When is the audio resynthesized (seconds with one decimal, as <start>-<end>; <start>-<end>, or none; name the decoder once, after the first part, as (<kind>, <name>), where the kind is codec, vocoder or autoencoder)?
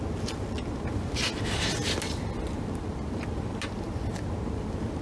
none